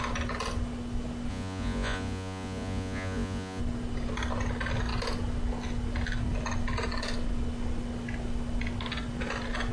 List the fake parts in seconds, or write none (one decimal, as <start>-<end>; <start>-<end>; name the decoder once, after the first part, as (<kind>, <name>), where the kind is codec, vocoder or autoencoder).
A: 1.3-3.6 (vocoder, Vocos)